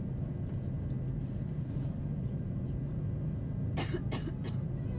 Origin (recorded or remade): recorded